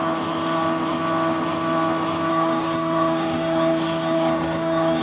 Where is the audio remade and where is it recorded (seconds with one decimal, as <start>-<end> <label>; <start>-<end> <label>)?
0.0-2.3 recorded; 2.3-5.0 remade